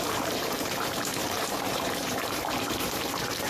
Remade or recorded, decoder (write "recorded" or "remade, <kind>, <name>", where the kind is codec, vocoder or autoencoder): remade, vocoder, BigVGAN v2